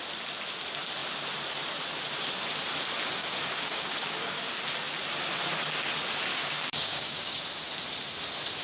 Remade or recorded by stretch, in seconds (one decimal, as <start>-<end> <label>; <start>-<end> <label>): 0.0-3.2 recorded; 3.2-4.4 remade; 4.4-6.3 recorded; 6.3-7.4 remade; 7.4-8.6 recorded